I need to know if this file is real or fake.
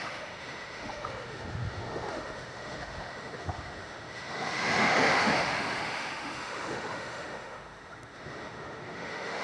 fake